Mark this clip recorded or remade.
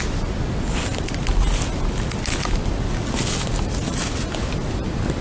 recorded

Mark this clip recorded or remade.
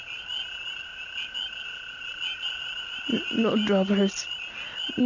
recorded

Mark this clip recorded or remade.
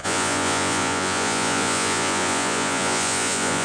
remade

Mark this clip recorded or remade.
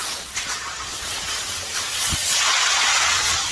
remade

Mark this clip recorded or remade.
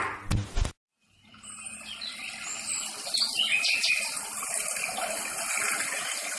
recorded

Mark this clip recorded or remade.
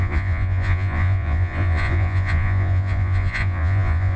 remade